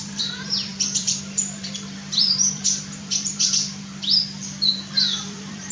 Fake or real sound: fake